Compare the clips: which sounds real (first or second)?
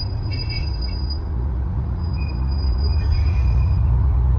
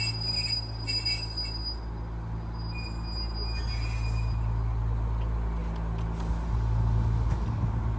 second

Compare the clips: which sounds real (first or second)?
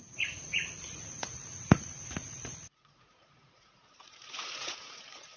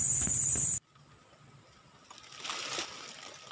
second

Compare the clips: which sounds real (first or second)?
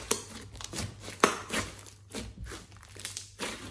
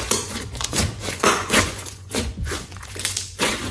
first